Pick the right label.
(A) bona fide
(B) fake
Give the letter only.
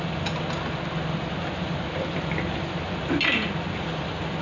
A